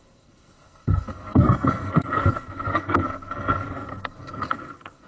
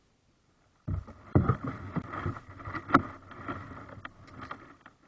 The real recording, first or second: second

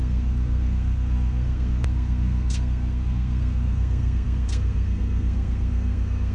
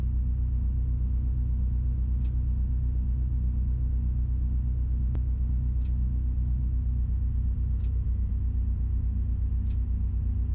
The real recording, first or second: second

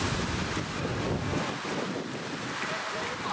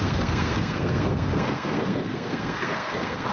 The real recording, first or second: first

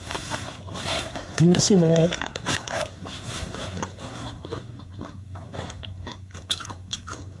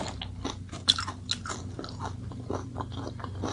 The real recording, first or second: second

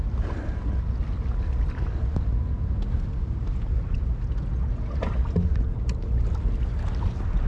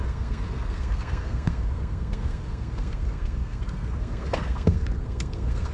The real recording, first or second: first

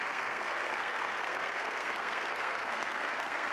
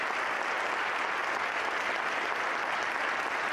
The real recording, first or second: second